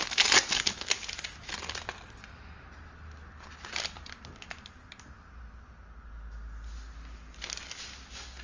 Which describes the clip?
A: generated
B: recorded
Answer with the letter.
B